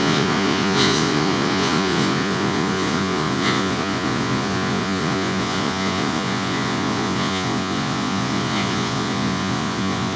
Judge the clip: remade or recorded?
remade